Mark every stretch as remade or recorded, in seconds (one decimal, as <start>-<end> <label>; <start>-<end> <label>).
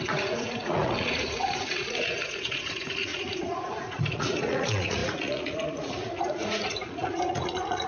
0.0-7.9 remade